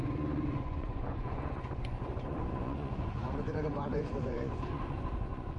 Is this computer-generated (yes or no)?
yes